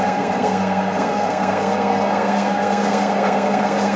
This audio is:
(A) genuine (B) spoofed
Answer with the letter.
B